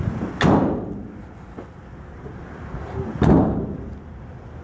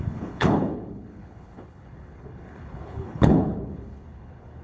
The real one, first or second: first